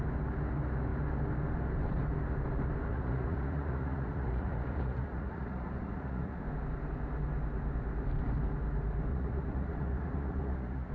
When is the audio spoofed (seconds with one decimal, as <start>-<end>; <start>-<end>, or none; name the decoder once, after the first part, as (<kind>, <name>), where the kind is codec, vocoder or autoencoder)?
2.9-6.4 (vocoder, Vocos); 9.1-10.9